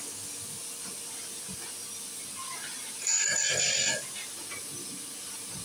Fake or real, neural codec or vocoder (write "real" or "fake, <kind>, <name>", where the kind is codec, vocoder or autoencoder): real